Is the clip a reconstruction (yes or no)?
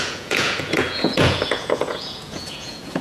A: yes